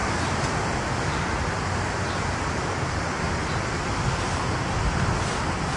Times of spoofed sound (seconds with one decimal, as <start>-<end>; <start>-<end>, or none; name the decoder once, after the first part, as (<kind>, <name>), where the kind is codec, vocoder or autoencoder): none